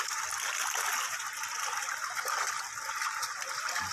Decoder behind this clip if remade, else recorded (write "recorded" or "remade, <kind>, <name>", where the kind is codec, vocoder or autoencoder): recorded